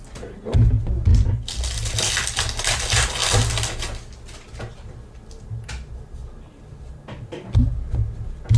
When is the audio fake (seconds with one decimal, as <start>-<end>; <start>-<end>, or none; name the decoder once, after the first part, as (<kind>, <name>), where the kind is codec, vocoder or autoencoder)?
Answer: 6.2-7.7 (vocoder, BigVGAN v2)